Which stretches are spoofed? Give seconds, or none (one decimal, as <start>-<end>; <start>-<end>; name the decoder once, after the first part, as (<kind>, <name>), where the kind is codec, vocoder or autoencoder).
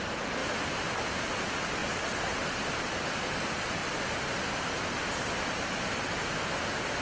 none